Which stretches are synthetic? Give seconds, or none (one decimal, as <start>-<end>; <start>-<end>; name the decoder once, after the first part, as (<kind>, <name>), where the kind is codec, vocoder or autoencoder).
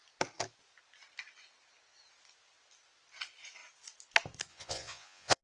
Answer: 4.5-5.4 (vocoder, Vocos)